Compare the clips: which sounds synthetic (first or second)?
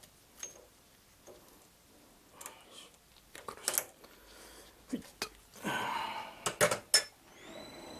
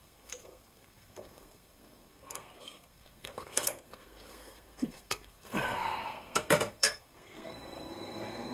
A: second